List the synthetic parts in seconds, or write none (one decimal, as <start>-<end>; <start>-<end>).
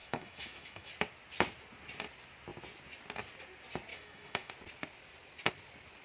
0.0-0.9; 3.9-4.5